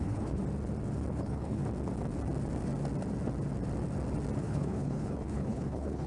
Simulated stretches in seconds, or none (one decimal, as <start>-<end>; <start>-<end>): 0.0-0.4; 1.1-1.6; 4.4-6.1